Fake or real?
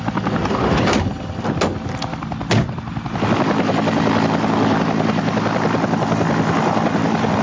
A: real